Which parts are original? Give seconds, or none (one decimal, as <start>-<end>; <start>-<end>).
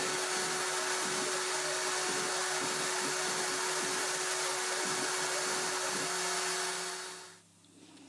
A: 0.0-8.1